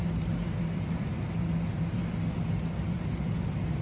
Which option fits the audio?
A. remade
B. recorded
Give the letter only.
B